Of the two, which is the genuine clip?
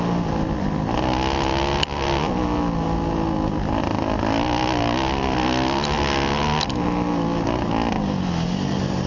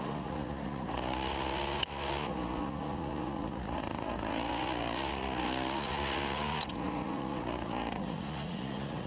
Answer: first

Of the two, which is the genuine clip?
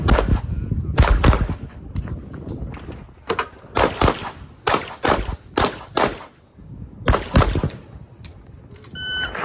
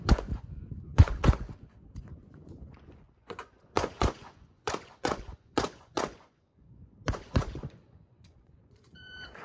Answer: first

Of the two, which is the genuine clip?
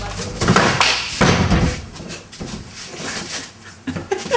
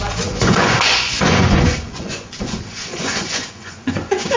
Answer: first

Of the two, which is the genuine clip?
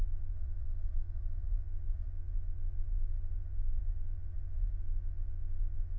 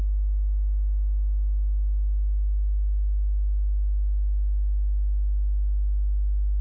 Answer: second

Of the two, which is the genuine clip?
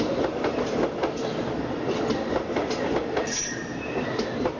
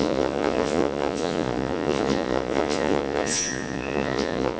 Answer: first